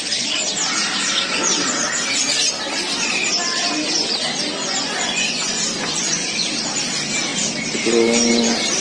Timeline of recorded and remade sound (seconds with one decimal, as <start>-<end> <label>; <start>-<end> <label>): 0.0-4.6 recorded; 4.6-6.5 remade; 6.5-8.8 recorded